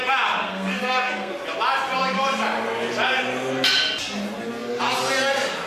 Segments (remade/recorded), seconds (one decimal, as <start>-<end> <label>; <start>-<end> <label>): 0.0-0.4 recorded; 0.4-1.3 remade; 1.3-5.7 recorded